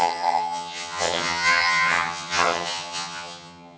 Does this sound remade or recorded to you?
remade